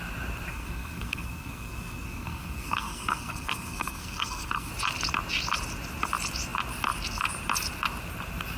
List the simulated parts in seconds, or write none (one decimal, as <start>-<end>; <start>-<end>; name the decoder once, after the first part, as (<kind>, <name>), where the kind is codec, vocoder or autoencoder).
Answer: 0.5-4.7 (codec, SNAC)